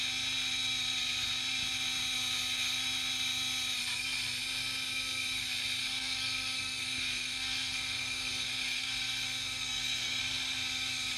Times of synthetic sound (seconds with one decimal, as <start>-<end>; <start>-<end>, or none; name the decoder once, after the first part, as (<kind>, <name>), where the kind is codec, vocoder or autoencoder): 5.8-10.2 (codec, SNAC)